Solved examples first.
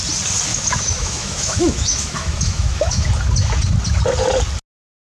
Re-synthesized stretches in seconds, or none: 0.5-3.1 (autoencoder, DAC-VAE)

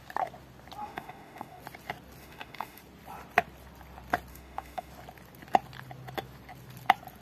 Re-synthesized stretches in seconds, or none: 0.8-1.6 (autoencoder, DAC-VAE); 2.2-2.8; 4.3-4.9

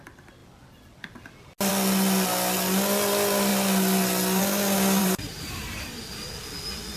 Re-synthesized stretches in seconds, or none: 5.0-6.0 (vocoder, BigVGAN v2)

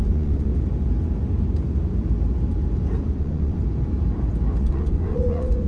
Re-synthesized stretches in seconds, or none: 0.0-0.5 (vocoder, Vocos); 3.2-3.6; 4.6-5.7

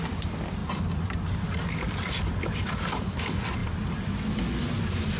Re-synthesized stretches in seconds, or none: none

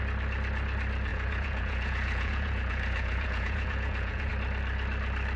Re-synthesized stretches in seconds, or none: 1.1-4.3 (vocoder, Vocos)

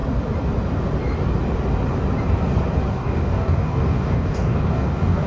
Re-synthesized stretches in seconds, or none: 2.9-5.3 (codec, DAC)